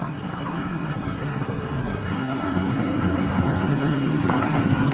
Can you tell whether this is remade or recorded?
remade